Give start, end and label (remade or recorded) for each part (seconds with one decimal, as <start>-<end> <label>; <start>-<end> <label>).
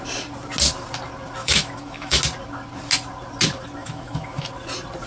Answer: 0.0-1.4 recorded; 1.4-2.2 remade; 2.2-3.8 recorded; 3.8-4.5 remade; 4.5-5.1 recorded